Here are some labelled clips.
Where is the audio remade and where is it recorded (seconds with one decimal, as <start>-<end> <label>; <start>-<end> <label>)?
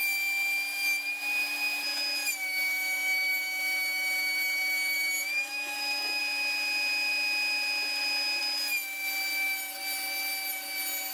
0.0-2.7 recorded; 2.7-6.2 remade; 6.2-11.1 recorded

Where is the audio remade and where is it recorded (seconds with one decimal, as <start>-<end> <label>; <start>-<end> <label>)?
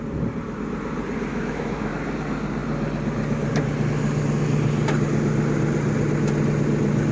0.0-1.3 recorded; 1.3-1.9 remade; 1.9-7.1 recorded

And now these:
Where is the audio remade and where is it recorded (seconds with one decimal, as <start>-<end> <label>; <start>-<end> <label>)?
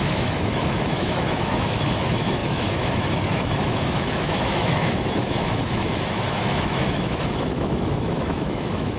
0.0-9.0 remade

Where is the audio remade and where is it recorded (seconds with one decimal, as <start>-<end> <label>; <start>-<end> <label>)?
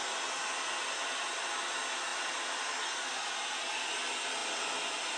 0.0-5.2 recorded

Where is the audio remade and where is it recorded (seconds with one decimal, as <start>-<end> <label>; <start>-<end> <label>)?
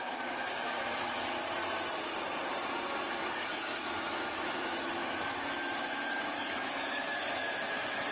0.0-1.6 remade; 1.6-3.3 recorded; 3.3-8.1 remade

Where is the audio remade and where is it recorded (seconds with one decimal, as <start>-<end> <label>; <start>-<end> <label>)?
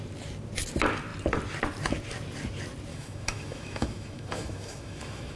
0.0-2.9 recorded; 2.9-5.4 remade